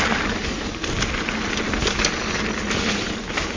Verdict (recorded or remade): recorded